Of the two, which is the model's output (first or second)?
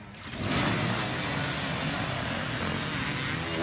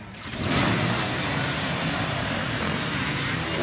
second